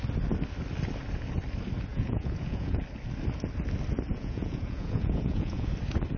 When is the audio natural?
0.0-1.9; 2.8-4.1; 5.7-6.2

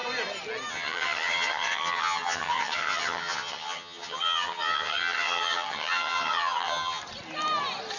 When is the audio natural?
0.0-0.7; 7.0-8.0